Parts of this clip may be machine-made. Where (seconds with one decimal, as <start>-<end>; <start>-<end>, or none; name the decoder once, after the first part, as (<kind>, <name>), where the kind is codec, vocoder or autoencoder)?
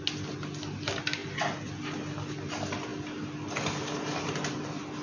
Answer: none